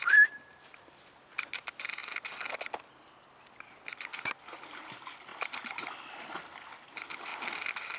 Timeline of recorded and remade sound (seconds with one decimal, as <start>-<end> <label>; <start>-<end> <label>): 0.0-8.0 recorded